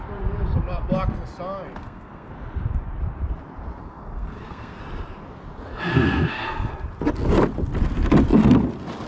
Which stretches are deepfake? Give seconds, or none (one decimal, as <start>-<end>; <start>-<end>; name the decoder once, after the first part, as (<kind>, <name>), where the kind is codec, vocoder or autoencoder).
1.8-2.3 (codec, SNAC); 3.8-4.8; 5.9-6.7